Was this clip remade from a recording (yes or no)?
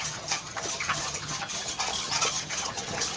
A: yes